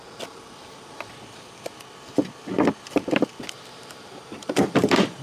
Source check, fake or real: fake